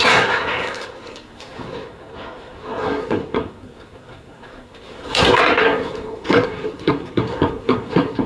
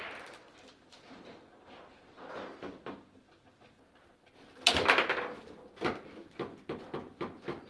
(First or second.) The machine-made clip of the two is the first